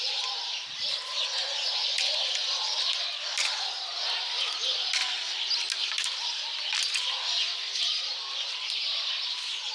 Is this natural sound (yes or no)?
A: yes